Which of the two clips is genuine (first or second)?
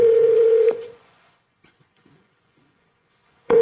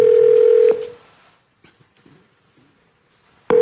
second